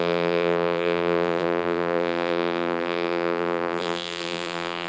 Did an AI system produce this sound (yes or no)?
yes